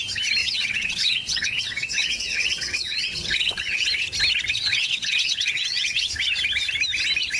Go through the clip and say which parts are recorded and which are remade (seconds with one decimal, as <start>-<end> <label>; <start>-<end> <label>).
0.0-0.4 recorded; 0.4-3.9 remade; 3.9-4.5 recorded; 4.5-6.1 remade; 6.1-7.4 recorded